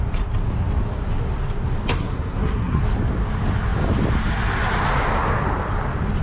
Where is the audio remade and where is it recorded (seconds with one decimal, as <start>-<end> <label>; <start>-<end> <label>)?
0.0-1.9 recorded; 1.9-2.8 remade; 2.8-6.2 recorded